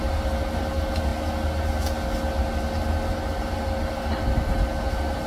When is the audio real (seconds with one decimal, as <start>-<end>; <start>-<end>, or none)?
0.0-5.3